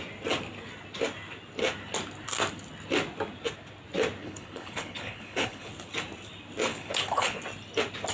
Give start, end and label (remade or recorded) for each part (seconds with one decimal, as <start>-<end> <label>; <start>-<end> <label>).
0.0-4.2 recorded; 4.2-5.7 remade; 5.7-6.7 recorded; 6.7-7.4 remade; 7.4-8.1 recorded

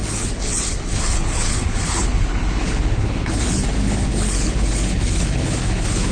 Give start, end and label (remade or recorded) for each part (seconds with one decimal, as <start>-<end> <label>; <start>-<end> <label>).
0.0-6.1 remade

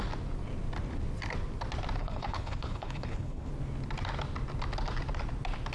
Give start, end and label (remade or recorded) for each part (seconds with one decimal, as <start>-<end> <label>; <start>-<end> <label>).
0.0-2.0 recorded; 2.0-3.5 remade; 3.5-5.7 recorded

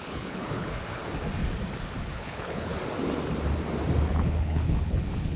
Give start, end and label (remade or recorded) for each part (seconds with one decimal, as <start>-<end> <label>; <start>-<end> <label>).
0.0-1.0 remade; 1.0-2.0 recorded; 2.0-2.7 remade; 2.7-4.1 recorded; 4.1-5.4 remade

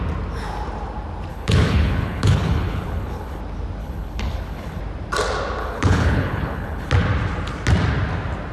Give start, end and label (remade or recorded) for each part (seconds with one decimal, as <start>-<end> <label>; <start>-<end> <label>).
0.0-1.3 recorded; 1.3-3.4 remade; 3.4-3.8 recorded; 3.8-4.8 remade; 4.8-5.6 recorded; 5.6-6.9 remade; 6.9-8.5 recorded